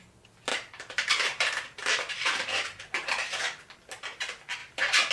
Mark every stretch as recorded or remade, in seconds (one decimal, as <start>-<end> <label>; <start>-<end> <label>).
0.0-0.5 recorded; 0.5-3.6 remade; 3.6-4.6 recorded; 4.6-5.1 remade